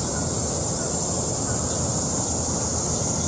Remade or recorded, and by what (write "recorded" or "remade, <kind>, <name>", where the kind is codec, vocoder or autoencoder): recorded